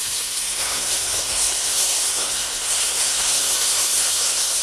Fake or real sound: fake